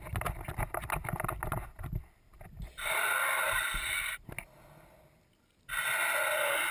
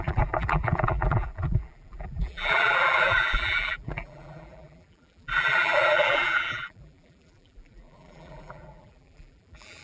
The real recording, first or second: first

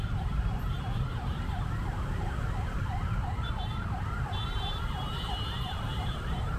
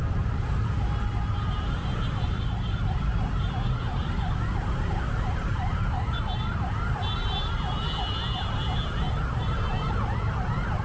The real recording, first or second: second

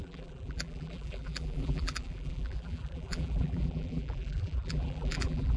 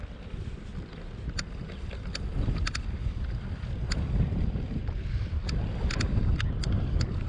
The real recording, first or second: second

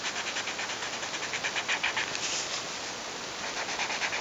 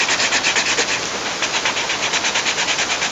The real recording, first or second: first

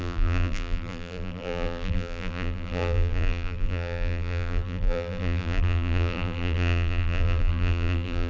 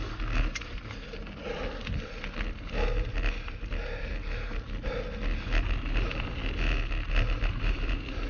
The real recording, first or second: second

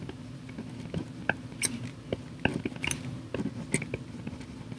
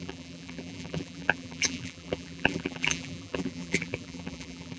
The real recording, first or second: first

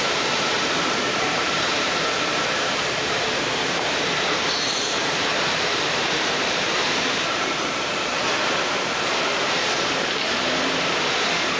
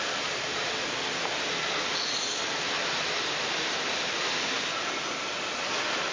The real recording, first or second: second